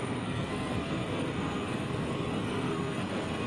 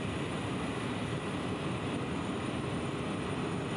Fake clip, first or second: first